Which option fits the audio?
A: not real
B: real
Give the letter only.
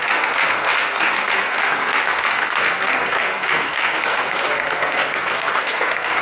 A